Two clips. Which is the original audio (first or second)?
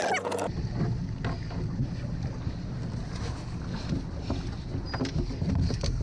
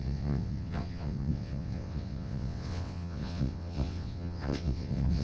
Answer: first